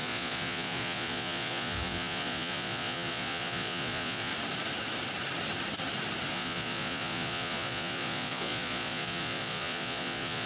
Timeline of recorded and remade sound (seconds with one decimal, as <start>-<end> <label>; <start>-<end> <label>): 0.0-4.3 remade; 4.3-6.3 recorded; 6.3-10.5 remade